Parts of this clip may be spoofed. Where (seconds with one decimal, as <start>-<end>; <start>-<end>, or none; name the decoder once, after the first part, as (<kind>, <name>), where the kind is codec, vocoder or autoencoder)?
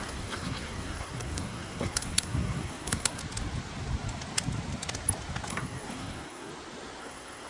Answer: 0.0-3.2 (codec, SNAC); 5.5-6.5; 7.0-7.5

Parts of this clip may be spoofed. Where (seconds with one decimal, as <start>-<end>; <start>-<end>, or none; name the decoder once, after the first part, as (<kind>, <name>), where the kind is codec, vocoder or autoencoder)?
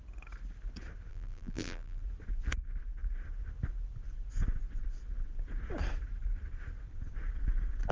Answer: 1.1-2.0 (vocoder, BigVGAN v2)